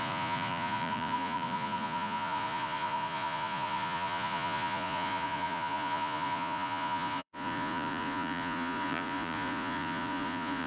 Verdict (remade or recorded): remade